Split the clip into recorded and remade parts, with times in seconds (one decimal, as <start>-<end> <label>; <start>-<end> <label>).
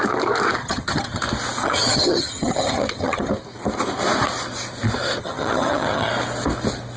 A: 0.0-0.6 recorded; 0.6-1.2 remade; 1.2-1.6 recorded; 1.6-3.3 remade; 3.3-5.2 recorded; 5.2-6.1 remade; 6.1-7.0 recorded